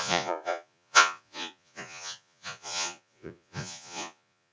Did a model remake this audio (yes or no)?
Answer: yes